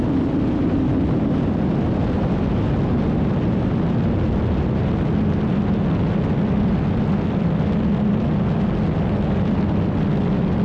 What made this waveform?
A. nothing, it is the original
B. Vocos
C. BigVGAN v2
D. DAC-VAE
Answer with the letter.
A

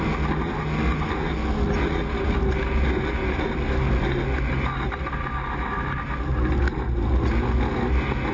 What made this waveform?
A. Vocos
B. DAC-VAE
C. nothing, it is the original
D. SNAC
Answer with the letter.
C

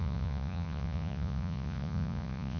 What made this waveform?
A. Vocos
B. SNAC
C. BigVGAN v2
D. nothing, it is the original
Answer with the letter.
A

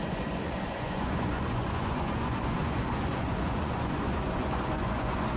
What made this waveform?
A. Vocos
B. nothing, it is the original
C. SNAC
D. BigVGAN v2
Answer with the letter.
A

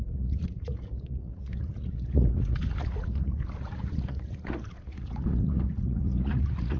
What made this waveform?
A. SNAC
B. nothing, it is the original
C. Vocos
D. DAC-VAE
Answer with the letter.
C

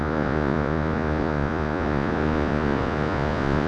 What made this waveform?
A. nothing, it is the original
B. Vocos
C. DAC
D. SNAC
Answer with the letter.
B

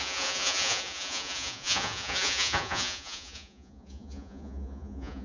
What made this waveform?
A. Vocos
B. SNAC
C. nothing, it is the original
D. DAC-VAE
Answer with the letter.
A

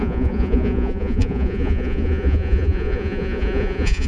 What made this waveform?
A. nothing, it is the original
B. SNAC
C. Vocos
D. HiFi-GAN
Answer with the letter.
C